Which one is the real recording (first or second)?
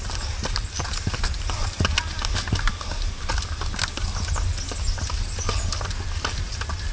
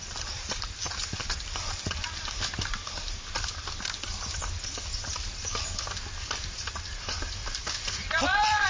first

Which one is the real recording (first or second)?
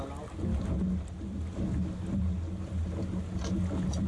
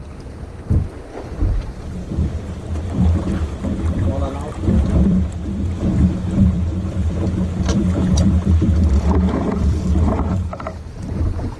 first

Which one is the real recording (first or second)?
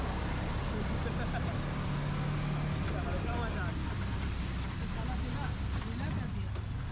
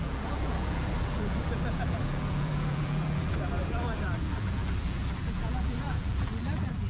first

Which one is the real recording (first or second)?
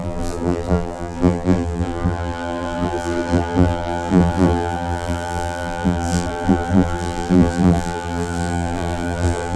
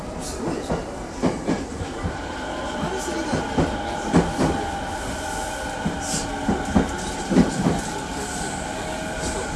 second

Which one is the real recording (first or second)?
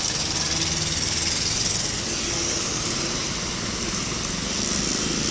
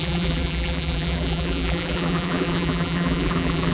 first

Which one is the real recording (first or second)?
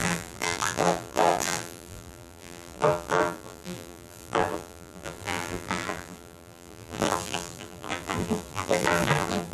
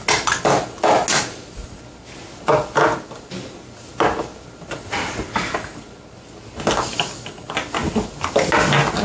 second